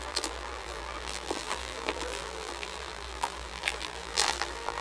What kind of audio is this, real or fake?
fake